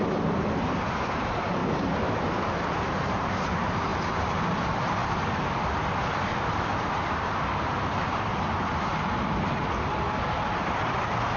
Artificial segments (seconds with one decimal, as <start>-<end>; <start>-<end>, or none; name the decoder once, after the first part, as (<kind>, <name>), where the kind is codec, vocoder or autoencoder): 0.0-5.0 (vocoder, BigVGAN v2); 6.3-8.3; 11.0-11.4